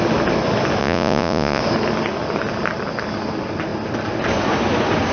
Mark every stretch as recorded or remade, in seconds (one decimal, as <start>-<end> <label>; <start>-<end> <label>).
0.0-0.8 recorded; 0.8-1.6 remade; 1.6-5.1 recorded